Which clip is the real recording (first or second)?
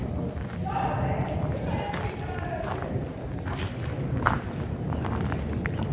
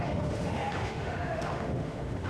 first